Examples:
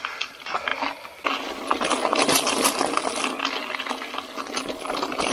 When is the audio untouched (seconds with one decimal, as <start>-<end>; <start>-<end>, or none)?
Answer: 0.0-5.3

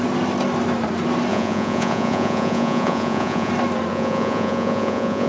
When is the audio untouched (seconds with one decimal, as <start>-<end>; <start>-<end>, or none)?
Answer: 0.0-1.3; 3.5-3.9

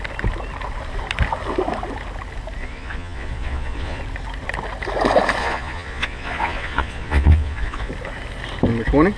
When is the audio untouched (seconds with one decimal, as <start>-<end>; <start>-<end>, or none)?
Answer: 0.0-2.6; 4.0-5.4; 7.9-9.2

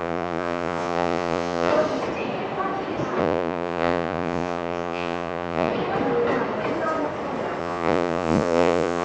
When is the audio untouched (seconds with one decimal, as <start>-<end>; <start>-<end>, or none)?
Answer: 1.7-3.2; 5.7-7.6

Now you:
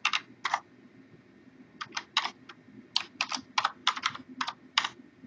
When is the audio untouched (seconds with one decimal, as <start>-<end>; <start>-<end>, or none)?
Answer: 0.0-5.3

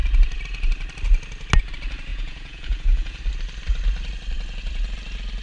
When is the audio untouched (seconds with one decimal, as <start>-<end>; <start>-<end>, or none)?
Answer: 0.0-2.1; 3.2-5.4

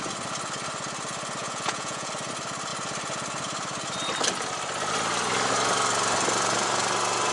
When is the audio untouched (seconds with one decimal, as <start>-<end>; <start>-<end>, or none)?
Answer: 0.0-1.4; 2.1-7.3